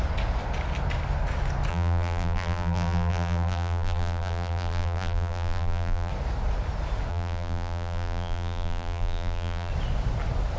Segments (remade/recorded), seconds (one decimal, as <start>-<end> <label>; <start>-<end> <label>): 0.0-1.7 recorded; 1.7-6.1 remade; 6.1-7.1 recorded; 7.1-9.7 remade; 9.7-10.6 recorded